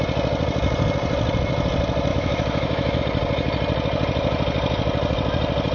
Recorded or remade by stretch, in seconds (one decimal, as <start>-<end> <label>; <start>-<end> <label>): 0.0-2.1 recorded; 2.1-3.0 remade; 3.0-5.7 recorded